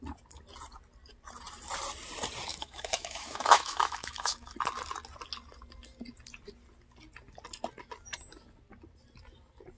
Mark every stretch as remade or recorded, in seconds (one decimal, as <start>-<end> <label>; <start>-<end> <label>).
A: 0.0-2.5 recorded; 2.5-4.5 remade; 4.5-9.8 recorded